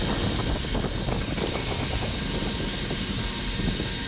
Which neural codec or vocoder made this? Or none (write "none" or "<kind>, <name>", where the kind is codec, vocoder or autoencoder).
none